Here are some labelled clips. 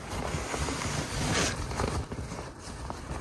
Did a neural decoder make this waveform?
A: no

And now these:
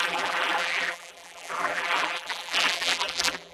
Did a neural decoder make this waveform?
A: yes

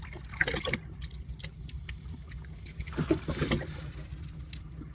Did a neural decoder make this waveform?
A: no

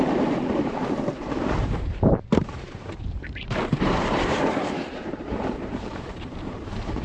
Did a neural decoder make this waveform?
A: yes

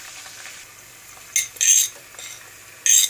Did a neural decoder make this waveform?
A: no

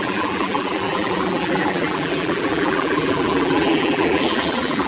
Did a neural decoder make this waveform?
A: yes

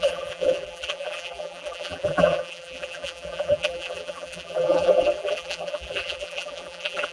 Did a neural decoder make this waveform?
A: yes